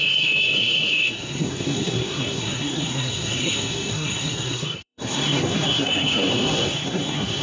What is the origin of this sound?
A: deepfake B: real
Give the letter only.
A